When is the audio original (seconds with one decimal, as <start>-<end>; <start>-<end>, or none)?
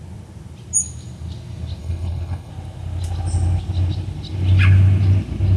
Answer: 0.0-1.8; 2.5-5.6